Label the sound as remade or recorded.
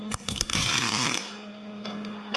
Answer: remade